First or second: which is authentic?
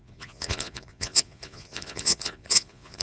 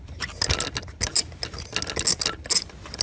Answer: second